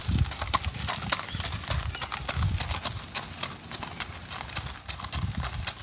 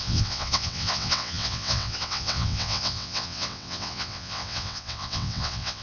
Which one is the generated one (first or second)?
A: second